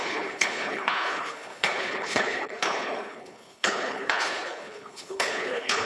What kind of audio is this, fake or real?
fake